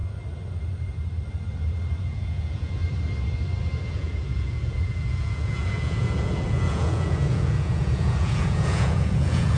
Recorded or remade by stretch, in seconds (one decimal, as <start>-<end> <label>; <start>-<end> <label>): 0.0-2.0 recorded; 2.0-2.8 remade; 2.8-3.9 recorded; 3.9-9.6 remade